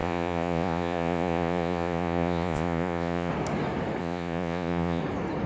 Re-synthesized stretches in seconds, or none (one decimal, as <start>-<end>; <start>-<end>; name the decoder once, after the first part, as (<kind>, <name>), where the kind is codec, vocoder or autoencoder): 0.0-3.3 (vocoder, Vocos); 4.0-5.0